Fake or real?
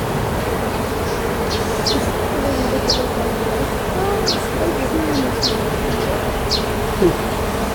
real